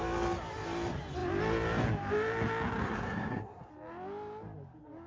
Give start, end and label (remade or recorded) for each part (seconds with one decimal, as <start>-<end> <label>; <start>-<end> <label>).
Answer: 0.0-2.8 recorded; 2.8-3.7 remade; 3.7-5.1 recorded